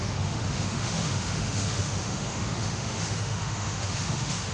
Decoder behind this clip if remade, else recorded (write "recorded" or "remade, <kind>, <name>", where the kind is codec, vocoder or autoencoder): remade, autoencoder, DAC-VAE